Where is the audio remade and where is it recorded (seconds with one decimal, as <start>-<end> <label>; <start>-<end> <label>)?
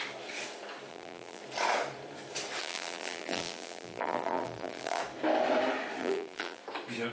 0.0-0.9 recorded; 0.9-1.4 remade; 1.4-2.6 recorded; 2.6-5.0 remade; 5.0-6.0 recorded; 6.0-6.6 remade; 6.6-7.1 recorded